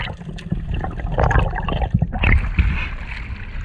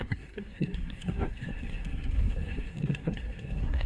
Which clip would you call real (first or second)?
first